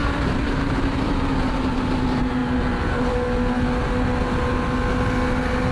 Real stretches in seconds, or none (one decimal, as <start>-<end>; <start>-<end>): 1.9-5.7